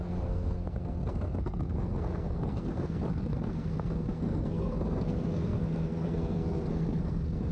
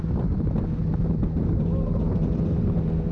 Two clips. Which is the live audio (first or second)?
second